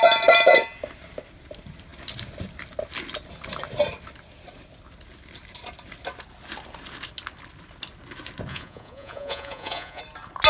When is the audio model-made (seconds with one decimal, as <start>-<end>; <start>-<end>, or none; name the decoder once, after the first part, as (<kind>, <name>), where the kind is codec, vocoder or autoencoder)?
8.5-10.0 (vocoder, Vocos)